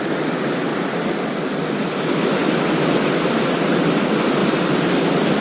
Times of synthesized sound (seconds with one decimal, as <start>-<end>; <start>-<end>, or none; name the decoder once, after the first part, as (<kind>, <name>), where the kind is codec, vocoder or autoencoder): none